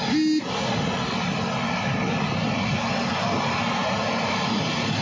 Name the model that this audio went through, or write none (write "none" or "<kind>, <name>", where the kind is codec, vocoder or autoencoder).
none